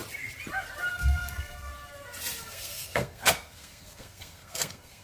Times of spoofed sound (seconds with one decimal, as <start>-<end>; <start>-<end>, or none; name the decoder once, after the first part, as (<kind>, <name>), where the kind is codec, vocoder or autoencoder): 0.9-1.7 (codec, SNAC); 2.4-5.0